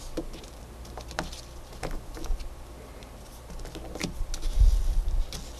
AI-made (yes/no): no